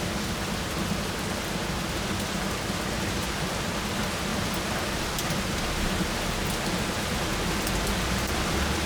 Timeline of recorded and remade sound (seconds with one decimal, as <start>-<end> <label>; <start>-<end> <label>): 0.0-4.3 recorded; 4.3-4.9 remade; 4.9-8.9 recorded